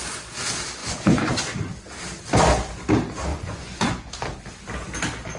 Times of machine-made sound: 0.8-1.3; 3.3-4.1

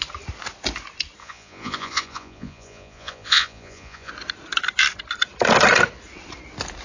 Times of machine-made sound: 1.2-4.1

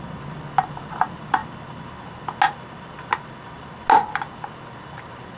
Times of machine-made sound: none

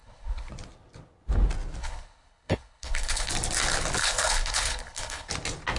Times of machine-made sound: 0.0-0.5; 1.8-3.3; 4.0-5.3

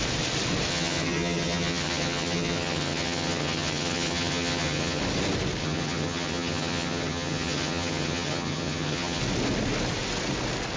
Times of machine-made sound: 0.7-5.0; 5.6-9.2

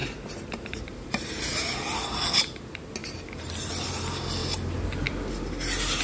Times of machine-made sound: 0.0-2.4; 3.0-3.7

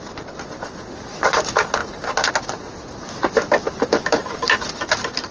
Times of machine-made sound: 1.8-2.3